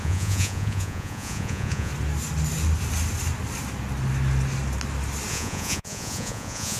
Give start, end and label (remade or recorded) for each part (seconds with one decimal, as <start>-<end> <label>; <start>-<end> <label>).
0.0-1.9 remade; 1.9-5.3 recorded; 5.3-6.8 remade